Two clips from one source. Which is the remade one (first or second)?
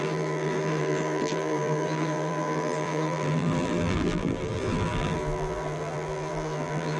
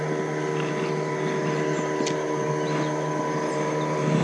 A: first